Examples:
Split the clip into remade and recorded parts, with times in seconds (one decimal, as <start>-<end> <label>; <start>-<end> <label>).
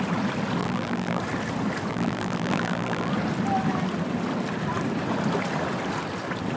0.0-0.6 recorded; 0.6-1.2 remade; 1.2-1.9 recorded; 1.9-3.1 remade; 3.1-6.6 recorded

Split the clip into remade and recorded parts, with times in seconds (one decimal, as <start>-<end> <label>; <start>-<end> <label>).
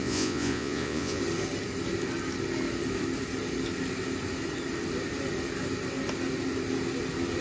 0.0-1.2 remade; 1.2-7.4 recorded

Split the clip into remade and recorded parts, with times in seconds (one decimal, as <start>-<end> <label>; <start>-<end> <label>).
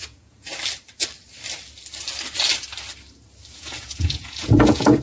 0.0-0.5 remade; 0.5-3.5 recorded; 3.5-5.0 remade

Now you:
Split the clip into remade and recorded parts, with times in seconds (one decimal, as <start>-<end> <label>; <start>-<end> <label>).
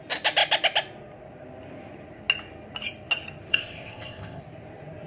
0.0-3.5 recorded; 3.5-4.4 remade; 4.4-5.1 recorded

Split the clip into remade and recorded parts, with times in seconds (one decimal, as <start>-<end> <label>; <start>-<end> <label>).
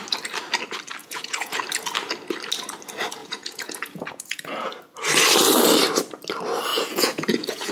0.0-1.0 recorded; 1.0-1.6 remade; 1.6-3.2 recorded; 3.2-4.7 remade; 4.7-6.7 recorded; 6.7-7.7 remade